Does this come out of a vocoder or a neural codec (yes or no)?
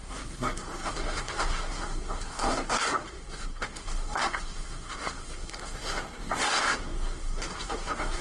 yes